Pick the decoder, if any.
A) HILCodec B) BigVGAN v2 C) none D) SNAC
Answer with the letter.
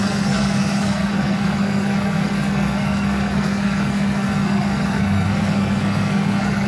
D